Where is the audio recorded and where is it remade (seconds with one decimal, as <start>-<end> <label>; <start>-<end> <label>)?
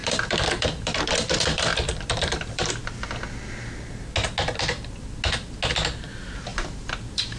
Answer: 0.0-2.7 remade; 2.7-6.5 recorded; 6.5-7.4 remade